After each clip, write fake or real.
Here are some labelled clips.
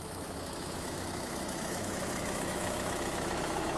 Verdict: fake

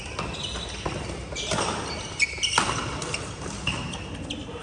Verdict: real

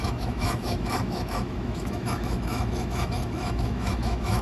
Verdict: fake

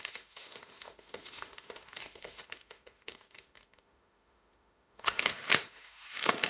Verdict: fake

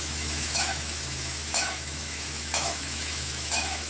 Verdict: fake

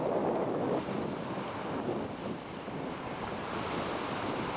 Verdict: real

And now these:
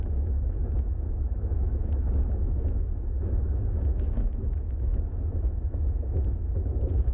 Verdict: fake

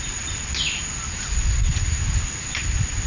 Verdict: real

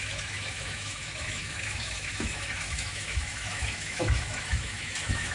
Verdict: fake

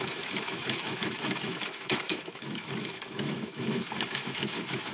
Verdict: fake